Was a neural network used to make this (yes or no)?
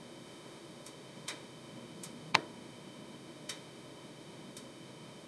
yes